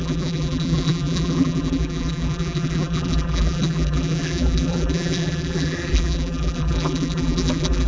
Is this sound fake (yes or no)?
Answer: yes